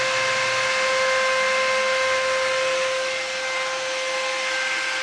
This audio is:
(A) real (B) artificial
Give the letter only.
A